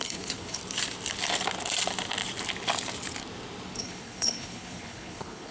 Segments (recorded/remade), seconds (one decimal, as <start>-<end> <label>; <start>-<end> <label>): 0.0-0.6 remade; 0.6-3.8 recorded; 3.8-5.5 remade